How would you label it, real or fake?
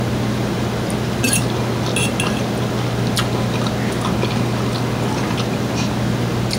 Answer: real